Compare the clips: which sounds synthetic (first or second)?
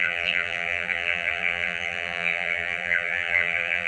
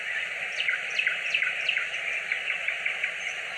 first